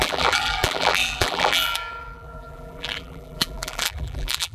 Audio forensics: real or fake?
fake